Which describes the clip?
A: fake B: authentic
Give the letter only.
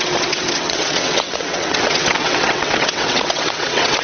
A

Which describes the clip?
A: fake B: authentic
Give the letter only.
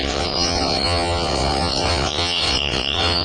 A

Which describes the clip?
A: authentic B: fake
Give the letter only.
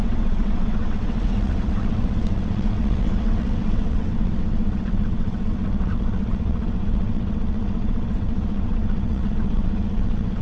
B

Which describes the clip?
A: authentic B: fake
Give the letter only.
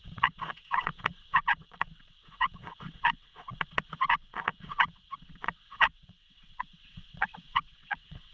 B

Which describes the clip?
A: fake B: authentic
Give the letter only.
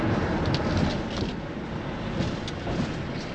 B